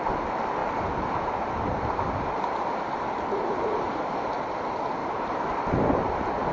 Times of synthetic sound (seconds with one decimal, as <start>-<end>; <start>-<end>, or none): 5.0-5.6